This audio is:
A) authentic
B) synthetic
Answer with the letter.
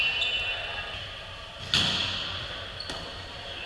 A